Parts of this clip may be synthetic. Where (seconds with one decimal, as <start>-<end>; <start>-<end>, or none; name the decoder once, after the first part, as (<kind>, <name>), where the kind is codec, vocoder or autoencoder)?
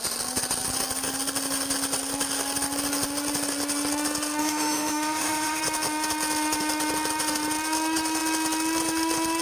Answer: 4.4-5.6 (autoencoder, DAC-VAE)